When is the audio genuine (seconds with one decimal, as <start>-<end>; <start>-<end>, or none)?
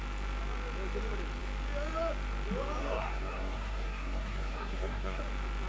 0.0-2.8; 5.2-5.7